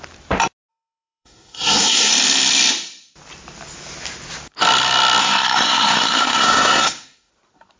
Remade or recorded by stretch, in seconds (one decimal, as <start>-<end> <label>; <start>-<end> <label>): 0.0-0.7 recorded; 0.7-2.1 remade; 2.1-5.2 recorded; 5.2-7.3 remade; 7.3-7.8 recorded